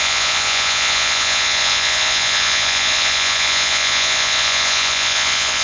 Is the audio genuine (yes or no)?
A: no